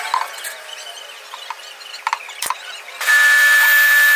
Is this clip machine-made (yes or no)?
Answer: no